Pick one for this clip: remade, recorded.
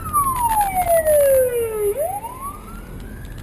recorded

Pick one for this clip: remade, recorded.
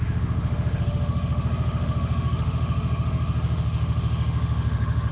remade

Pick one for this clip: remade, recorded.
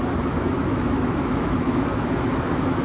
remade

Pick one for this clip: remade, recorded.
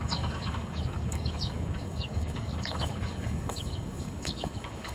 remade